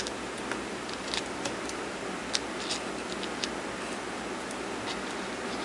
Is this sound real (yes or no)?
yes